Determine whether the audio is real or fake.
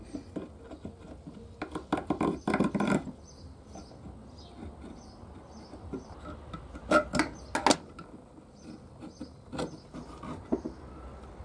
real